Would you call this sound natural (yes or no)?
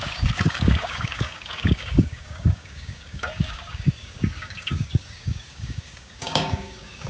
no